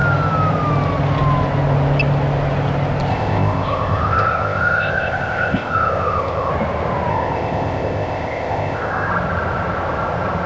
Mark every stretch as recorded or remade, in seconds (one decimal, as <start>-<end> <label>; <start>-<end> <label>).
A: 0.0-3.1 recorded; 3.1-6.5 remade; 6.5-7.1 recorded; 7.1-9.1 remade; 9.1-10.5 recorded